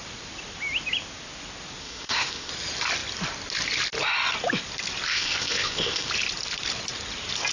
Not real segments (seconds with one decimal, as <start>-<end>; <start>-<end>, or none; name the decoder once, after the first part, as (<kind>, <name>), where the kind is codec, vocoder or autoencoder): 1.8-2.5 (codec, ZipCodec); 5.1-6.1